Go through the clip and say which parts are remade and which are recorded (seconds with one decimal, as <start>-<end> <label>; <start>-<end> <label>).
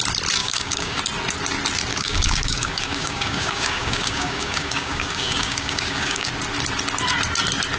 0.0-0.4 recorded; 0.4-1.0 remade; 1.0-1.9 recorded; 1.9-6.3 remade; 6.3-7.8 recorded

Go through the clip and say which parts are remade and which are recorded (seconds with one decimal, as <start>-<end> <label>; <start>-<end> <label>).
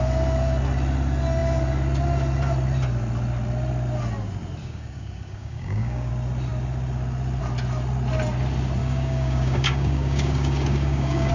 0.0-4.6 recorded; 4.6-6.1 remade; 6.1-8.8 recorded; 8.8-11.3 remade